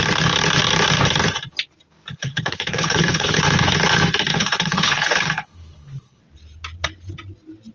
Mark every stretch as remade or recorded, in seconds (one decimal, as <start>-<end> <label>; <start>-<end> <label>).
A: 0.0-2.1 recorded; 2.1-3.4 remade; 3.4-4.3 recorded; 4.3-6.2 remade; 6.2-7.7 recorded